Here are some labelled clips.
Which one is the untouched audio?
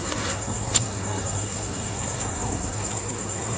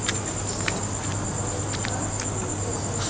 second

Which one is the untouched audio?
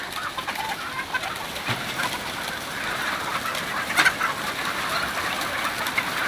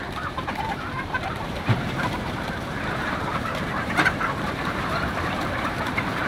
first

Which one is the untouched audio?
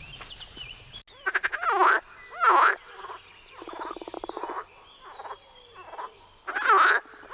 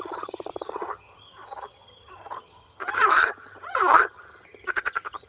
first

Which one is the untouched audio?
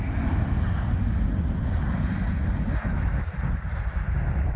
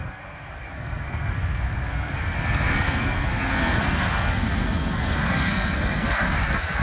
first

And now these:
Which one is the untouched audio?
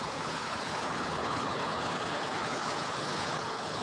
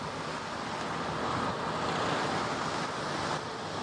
second